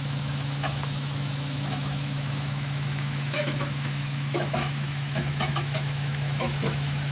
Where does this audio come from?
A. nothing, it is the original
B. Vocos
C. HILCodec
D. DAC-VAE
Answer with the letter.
D